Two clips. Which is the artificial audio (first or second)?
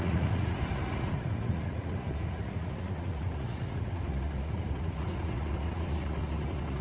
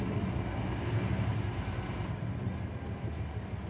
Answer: first